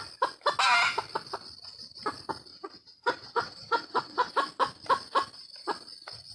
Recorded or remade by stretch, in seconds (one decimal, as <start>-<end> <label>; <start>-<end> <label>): 0.0-2.5 recorded; 2.5-4.3 remade; 4.3-6.3 recorded